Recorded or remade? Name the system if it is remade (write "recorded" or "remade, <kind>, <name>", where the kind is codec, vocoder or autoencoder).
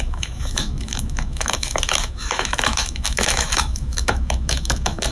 remade, autoencoder, DAC-VAE